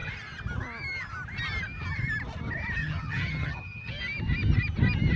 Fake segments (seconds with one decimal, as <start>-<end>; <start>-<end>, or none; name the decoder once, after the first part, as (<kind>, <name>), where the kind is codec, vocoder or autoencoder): 2.8-3.9 (vocoder, HiFi-GAN)